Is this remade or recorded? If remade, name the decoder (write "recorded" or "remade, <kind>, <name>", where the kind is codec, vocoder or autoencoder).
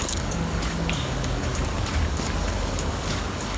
remade, codec, DAC